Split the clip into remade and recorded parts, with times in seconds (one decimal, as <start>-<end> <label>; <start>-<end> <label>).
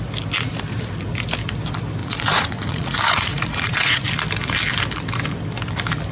0.0-2.0 recorded; 2.0-4.1 remade; 4.1-6.1 recorded